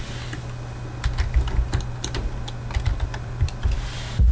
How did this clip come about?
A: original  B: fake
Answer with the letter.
A